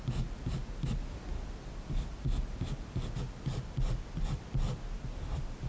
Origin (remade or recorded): recorded